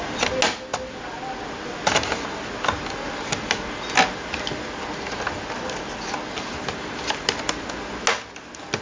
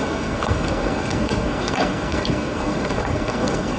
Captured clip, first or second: first